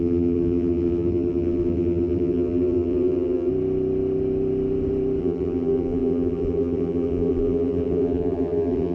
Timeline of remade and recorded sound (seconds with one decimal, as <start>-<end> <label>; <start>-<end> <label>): 0.0-3.5 remade; 3.5-5.2 recorded; 5.2-8.9 remade